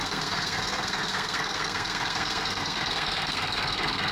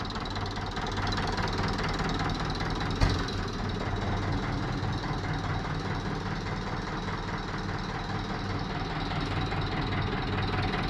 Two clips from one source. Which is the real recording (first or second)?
second